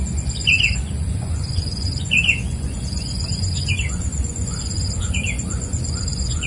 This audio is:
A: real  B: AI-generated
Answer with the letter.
B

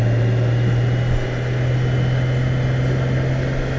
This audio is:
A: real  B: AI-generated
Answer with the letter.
A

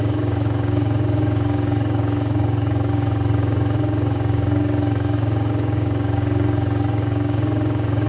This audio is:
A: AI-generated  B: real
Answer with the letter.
A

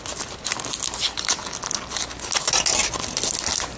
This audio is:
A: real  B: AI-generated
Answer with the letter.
A